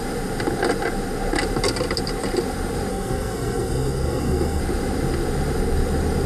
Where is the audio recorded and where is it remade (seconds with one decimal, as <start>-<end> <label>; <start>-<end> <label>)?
0.0-2.9 recorded; 2.9-4.6 remade; 4.6-6.3 recorded